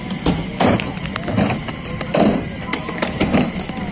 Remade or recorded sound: recorded